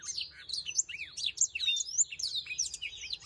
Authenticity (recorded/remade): recorded